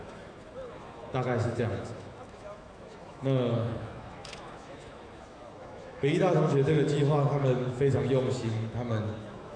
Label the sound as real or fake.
fake